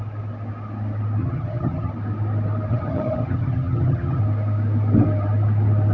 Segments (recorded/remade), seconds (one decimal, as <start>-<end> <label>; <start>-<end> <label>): 0.0-1.2 recorded; 1.2-1.9 remade; 1.9-2.7 recorded; 2.7-4.2 remade; 4.2-5.9 recorded